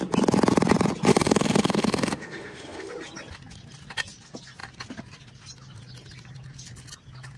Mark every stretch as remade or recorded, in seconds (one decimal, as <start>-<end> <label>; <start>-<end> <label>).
0.0-1.1 recorded; 1.1-2.9 remade; 2.9-7.4 recorded